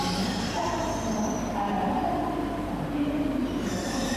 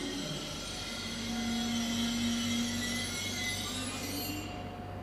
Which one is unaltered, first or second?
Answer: second